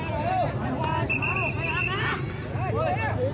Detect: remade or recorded recorded